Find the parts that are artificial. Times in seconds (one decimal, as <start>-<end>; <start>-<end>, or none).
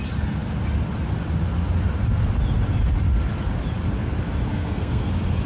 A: 4.5-5.1